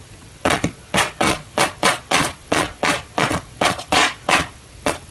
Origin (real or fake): fake